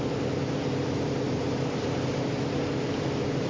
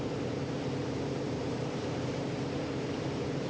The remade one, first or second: second